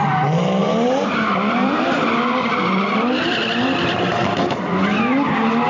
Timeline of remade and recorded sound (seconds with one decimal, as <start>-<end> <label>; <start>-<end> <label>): 0.0-0.6 recorded; 0.6-4.0 remade; 4.0-5.7 recorded